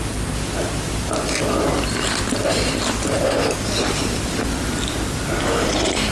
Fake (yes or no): no